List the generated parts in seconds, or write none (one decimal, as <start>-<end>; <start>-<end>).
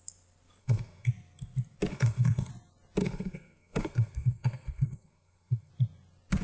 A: 0.6-1.1; 1.9-2.5; 3.0-5.7